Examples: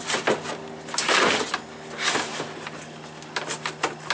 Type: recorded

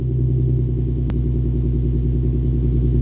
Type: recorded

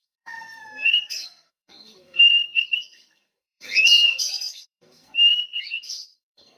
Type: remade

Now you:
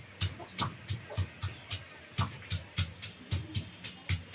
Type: recorded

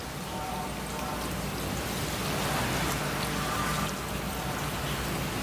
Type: recorded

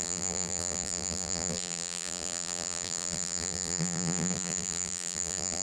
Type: remade